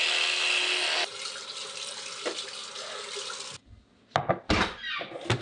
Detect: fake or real real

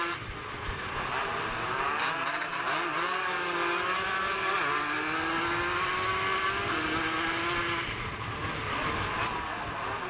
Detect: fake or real real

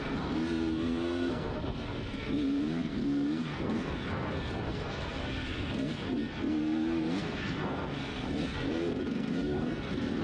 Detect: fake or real fake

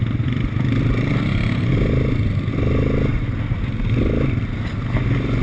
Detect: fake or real real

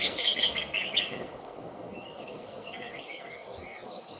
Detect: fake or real fake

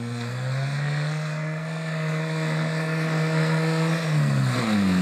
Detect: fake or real fake